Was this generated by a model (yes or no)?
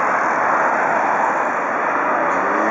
no